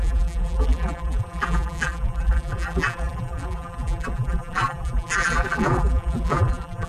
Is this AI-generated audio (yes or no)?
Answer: yes